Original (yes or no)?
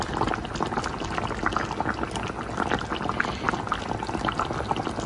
yes